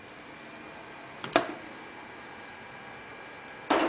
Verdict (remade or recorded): recorded